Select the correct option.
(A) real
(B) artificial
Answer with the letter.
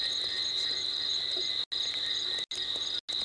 A